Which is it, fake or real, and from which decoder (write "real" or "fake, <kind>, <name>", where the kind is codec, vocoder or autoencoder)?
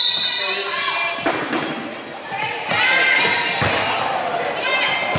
real